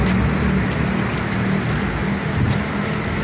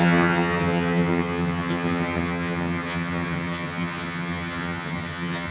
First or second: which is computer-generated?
second